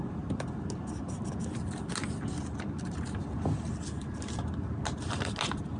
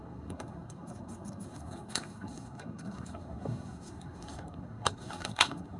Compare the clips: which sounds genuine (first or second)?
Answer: first